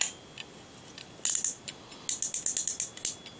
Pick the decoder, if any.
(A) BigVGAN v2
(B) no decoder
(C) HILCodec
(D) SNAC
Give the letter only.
B